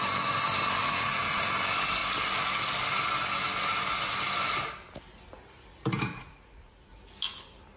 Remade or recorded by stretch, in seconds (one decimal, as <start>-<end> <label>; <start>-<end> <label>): 0.0-0.8 recorded; 0.8-1.4 remade; 1.4-6.1 recorded; 6.1-6.9 remade; 6.9-7.8 recorded